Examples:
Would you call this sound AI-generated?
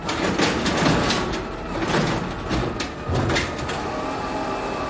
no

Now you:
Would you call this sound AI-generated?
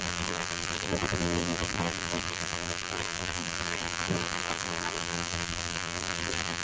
yes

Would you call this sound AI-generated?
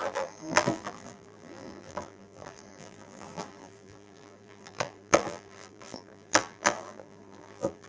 yes